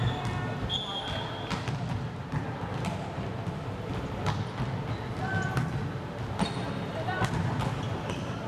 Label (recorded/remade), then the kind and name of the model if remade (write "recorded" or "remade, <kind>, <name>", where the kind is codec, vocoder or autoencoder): recorded